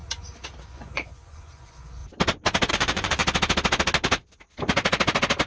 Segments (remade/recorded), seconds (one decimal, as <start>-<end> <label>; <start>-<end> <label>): 0.0-0.6 recorded; 0.6-2.0 remade; 2.0-2.7 recorded; 2.7-3.2 remade; 3.2-5.5 recorded